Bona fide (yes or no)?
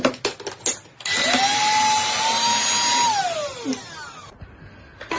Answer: yes